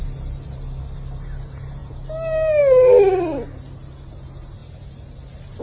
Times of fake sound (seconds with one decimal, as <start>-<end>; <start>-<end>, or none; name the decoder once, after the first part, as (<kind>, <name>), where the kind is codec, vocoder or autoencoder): none